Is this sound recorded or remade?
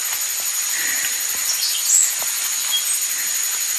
recorded